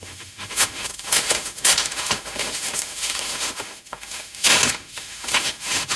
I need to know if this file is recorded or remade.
remade